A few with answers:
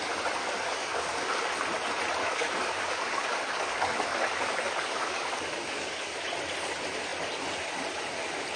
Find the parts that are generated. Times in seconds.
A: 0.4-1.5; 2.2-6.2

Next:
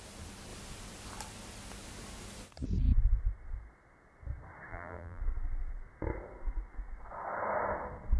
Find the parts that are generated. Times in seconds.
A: 4.7-5.2

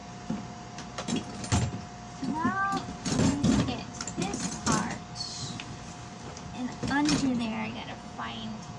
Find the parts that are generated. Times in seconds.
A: 7.1-8.8